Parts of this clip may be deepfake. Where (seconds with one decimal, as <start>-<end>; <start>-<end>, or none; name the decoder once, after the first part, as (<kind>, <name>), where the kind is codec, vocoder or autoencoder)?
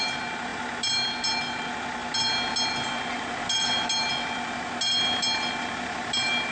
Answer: none